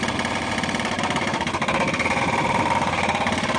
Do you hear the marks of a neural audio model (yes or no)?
no